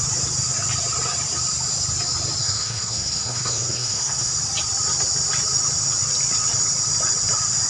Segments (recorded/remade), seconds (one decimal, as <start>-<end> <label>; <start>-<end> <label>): 0.0-2.4 recorded; 2.4-4.3 remade; 4.3-7.7 recorded